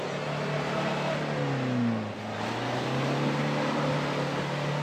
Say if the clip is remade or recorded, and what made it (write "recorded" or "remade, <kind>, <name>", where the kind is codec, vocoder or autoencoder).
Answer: recorded